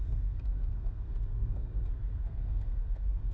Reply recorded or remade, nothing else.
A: remade